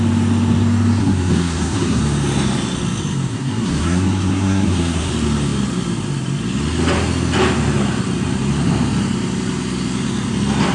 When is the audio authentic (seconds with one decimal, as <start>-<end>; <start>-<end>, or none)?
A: 0.0-1.0; 2.0-3.3; 5.1-10.7